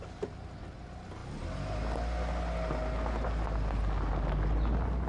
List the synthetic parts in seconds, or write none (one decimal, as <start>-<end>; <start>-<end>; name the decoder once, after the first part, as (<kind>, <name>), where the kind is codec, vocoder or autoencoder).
none